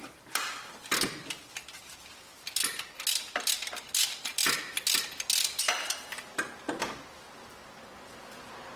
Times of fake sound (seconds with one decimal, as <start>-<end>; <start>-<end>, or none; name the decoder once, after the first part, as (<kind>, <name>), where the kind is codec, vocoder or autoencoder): none

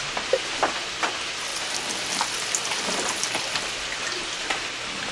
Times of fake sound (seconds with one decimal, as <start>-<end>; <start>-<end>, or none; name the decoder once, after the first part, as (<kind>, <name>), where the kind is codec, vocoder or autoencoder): none

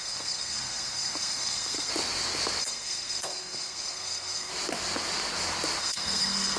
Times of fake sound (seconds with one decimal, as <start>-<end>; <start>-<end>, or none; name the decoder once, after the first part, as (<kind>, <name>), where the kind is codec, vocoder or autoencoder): 0.0-1.9 (codec, SNAC); 2.6-4.5; 5.8-6.6